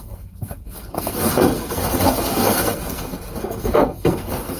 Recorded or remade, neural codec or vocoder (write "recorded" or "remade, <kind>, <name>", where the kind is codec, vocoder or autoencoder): remade, codec, SNAC